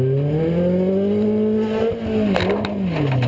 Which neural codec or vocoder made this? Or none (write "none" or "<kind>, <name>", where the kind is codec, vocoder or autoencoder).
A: none